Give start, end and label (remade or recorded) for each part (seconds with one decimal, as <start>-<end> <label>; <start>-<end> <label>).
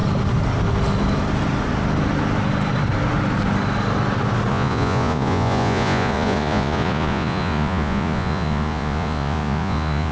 0.0-4.5 recorded; 4.5-10.1 remade